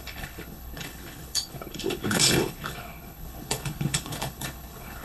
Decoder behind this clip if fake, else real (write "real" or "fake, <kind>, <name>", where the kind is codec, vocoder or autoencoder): fake, codec, HILCodec